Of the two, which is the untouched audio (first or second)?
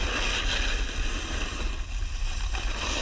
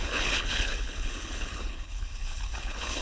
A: first